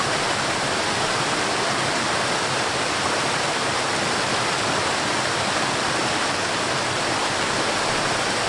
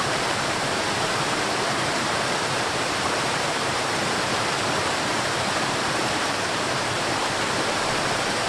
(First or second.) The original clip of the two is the first